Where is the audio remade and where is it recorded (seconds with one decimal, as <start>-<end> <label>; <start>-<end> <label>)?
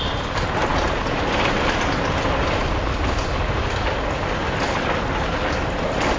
0.0-6.2 recorded